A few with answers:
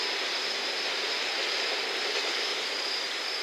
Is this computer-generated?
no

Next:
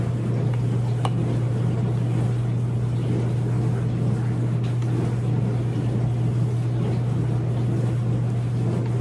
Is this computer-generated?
no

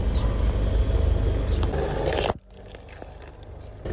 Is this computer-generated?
no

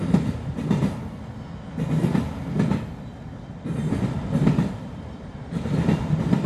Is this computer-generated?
yes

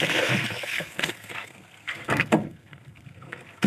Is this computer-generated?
yes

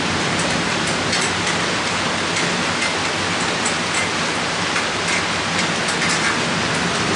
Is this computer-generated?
no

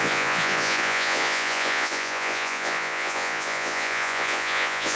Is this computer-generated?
yes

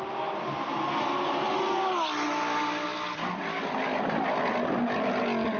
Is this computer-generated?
no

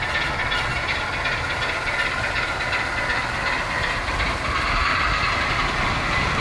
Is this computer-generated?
no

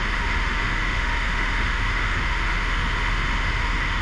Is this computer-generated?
yes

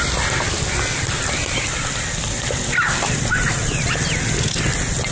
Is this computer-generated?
no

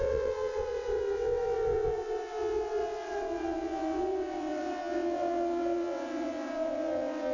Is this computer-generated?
yes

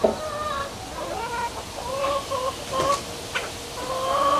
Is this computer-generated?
no